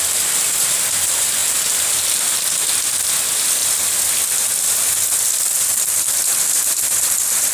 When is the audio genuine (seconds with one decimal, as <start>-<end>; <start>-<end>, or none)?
3.6-5.6